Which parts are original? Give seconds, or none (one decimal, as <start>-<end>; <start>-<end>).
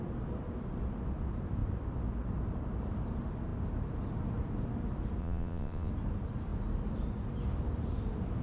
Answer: 0.0-5.2; 5.9-8.4